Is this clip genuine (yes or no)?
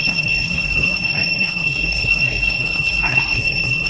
no